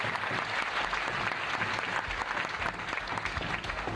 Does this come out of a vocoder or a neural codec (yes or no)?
no